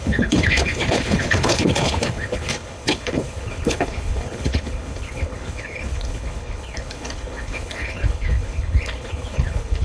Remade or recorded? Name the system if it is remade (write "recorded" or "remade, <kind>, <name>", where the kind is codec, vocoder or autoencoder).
remade, codec, HILCodec